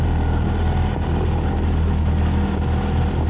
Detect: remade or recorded recorded